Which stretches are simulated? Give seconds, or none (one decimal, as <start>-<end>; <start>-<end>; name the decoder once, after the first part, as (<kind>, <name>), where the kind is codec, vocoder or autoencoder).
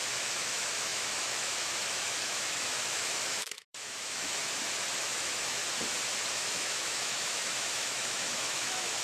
0.0-4.4 (autoencoder, DAC-VAE); 5.0-5.6; 6.3-9.0